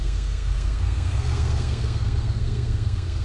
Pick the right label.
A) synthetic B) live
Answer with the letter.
A